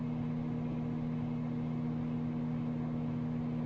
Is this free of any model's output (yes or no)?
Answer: yes